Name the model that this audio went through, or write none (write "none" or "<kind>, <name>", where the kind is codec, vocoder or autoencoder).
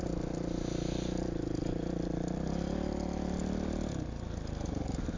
none